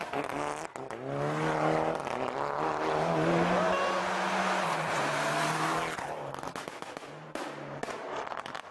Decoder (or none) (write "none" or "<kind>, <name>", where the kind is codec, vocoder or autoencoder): none